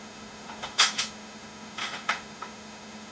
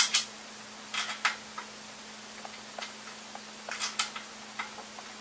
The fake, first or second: first